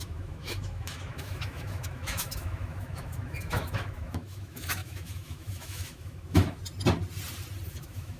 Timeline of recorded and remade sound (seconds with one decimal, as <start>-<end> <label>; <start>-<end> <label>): 0.0-6.6 remade; 6.6-7.7 recorded; 7.7-8.2 remade